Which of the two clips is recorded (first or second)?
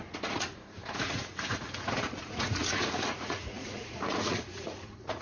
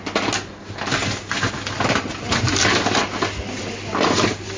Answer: second